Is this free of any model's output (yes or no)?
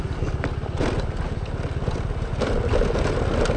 yes